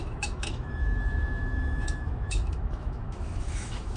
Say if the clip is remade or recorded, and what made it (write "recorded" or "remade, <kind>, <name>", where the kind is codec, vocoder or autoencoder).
remade, autoencoder, DAC-VAE